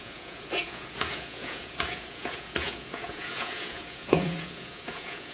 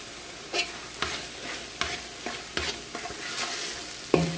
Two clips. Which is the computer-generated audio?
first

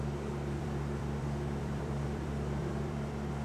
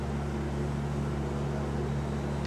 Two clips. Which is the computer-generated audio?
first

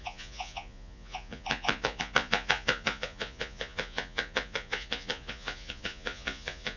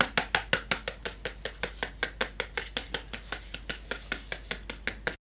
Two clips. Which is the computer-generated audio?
first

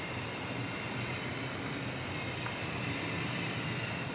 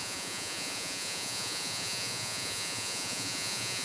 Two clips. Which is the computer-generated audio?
second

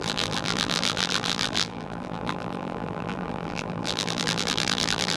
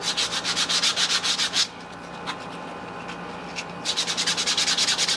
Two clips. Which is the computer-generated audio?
first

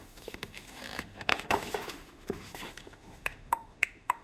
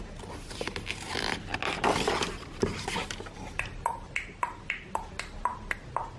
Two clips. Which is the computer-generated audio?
first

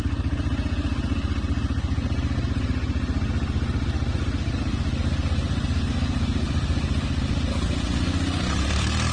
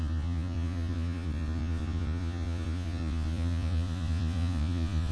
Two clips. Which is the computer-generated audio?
second